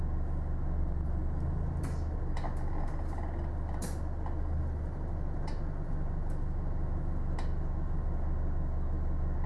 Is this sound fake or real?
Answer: real